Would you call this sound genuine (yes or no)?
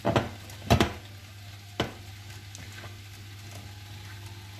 yes